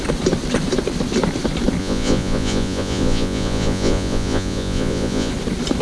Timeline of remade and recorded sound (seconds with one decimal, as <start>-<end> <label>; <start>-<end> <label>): 0.0-1.8 recorded; 1.8-5.3 remade; 5.3-5.8 recorded